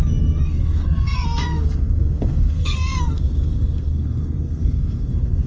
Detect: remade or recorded remade